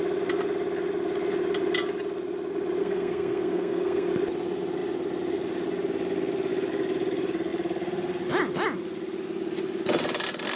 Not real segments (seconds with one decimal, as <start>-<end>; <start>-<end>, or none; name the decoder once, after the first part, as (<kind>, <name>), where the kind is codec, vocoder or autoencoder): 2.8-4.1 (codec, SNAC)